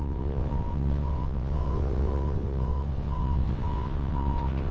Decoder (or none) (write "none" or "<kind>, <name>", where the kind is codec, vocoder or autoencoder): vocoder, WaveNeXt